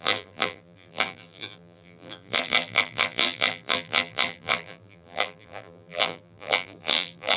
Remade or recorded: remade